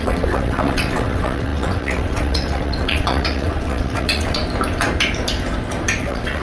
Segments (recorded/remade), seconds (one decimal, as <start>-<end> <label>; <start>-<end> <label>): 0.0-4.4 remade; 4.4-6.0 recorded; 6.0-6.4 remade

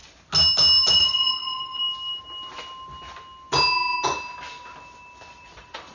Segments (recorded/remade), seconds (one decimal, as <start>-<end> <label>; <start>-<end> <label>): 0.0-0.9 recorded; 0.9-1.8 remade; 1.8-5.3 recorded; 5.3-5.9 remade

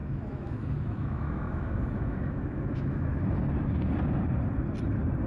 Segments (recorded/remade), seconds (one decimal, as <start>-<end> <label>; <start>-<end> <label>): 0.0-3.2 remade; 3.2-5.3 recorded

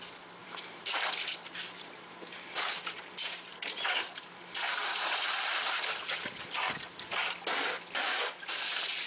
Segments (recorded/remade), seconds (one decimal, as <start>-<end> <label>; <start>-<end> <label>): 0.0-0.4 recorded; 0.4-5.6 remade; 5.6-9.1 recorded

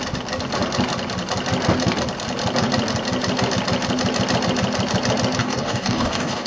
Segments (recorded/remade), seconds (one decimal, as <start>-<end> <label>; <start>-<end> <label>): 0.0-5.4 recorded; 5.4-6.5 remade

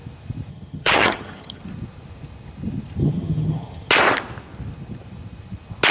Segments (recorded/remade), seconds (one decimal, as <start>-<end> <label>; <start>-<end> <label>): 0.0-0.5 recorded; 0.5-1.6 remade; 1.6-3.0 recorded; 3.0-3.9 remade; 3.9-5.9 recorded

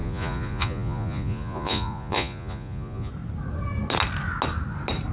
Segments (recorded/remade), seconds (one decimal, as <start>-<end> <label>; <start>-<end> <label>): 0.0-3.1 remade; 3.1-5.1 recorded

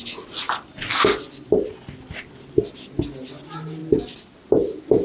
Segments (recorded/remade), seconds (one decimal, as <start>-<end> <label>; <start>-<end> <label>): 0.0-5.0 recorded